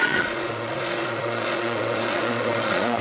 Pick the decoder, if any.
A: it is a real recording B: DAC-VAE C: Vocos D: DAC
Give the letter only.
C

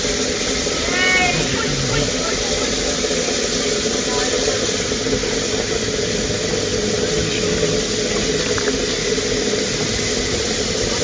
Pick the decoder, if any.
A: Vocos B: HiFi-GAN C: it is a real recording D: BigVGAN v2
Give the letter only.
C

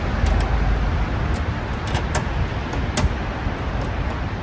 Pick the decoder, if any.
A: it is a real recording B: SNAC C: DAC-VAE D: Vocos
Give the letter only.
A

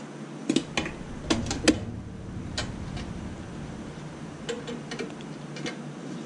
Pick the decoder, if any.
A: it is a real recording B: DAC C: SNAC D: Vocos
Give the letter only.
A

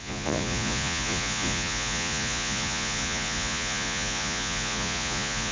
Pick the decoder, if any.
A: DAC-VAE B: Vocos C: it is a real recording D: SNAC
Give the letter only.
B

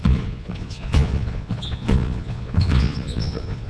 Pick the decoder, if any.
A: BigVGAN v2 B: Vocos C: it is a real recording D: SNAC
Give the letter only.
B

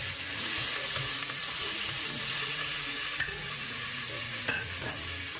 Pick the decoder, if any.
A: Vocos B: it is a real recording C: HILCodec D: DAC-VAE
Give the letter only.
A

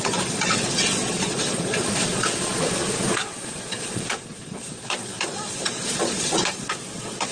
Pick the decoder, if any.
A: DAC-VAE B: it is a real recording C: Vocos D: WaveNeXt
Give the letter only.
C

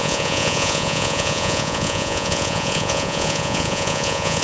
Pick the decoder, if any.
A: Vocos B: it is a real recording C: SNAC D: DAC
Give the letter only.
A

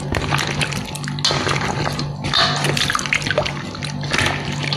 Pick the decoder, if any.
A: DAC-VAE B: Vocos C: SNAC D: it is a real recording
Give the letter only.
D